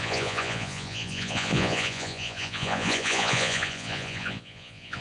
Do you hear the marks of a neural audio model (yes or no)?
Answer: yes